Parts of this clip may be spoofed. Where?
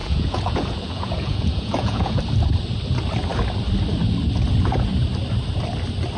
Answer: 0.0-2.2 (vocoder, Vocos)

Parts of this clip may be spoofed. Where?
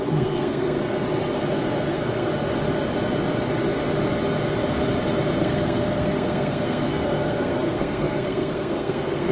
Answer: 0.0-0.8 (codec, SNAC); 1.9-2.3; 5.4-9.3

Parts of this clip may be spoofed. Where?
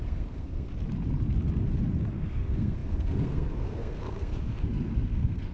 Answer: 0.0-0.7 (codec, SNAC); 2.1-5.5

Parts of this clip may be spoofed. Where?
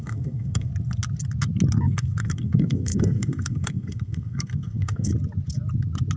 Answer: 0.0-0.7 (codec, SNAC); 1.8-5.1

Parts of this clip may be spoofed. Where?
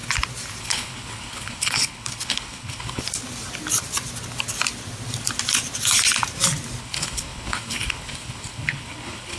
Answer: 0.6-3.0 (codec, HILCodec); 6.8-9.4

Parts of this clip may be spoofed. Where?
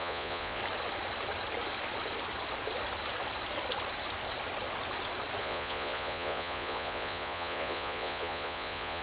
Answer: 0.0-0.6 (vocoder, Vocos); 5.4-9.0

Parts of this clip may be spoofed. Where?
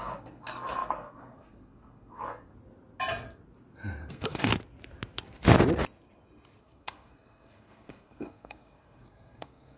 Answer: 0.0-2.5 (codec, SNAC); 4.1-4.5; 6.6-9.8